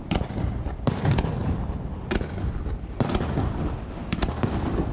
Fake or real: real